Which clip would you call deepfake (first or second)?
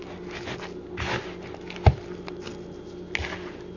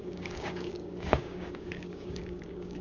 second